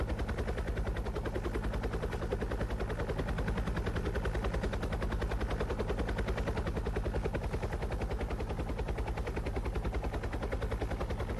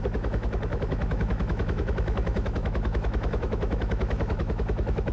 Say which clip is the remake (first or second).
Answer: second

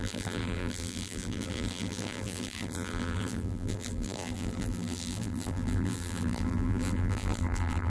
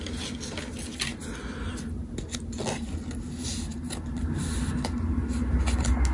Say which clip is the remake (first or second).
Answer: first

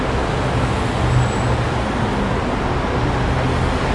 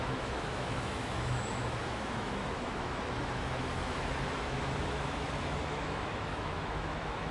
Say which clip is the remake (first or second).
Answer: second